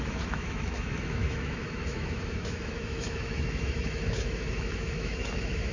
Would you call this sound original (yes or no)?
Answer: no